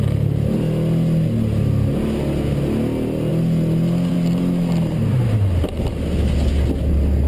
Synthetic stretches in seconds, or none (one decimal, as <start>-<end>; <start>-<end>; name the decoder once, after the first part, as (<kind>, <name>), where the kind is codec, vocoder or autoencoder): none